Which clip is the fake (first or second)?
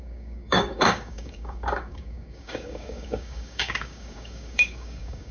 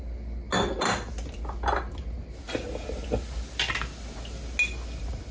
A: first